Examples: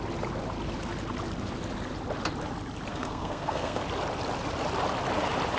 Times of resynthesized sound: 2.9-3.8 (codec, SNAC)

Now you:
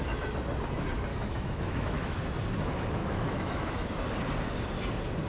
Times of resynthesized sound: 1.1-2.2 (autoencoder, DAC-VAE); 3.0-3.9

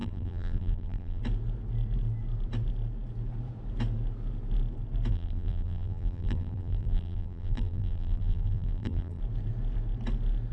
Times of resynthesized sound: 0.0-1.2 (vocoder, BigVGAN v2); 5.1-9.2

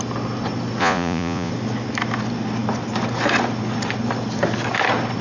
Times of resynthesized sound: 0.8-1.5 (vocoder, Vocos)

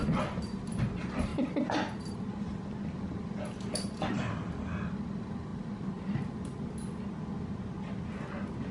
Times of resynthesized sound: 5.5-7.2 (vocoder, BigVGAN v2)

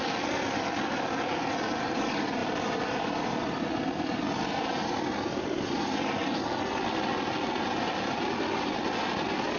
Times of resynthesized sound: none

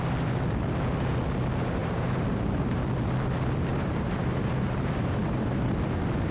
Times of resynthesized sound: 1.8-2.8 (vocoder, BigVGAN v2); 3.7-5.6

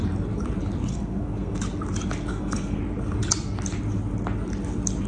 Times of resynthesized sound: 0.9-1.6 (codec, SNAC); 2.3-2.8